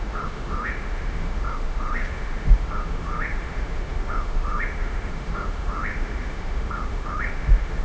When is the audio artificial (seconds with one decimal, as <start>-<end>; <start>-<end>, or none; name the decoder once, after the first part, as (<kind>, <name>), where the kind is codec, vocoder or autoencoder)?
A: 0.0-7.8 (autoencoder, DAC-VAE)